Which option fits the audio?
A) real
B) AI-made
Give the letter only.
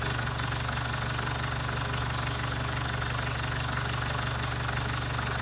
A